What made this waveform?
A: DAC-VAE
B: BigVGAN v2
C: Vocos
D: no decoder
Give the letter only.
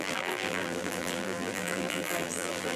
B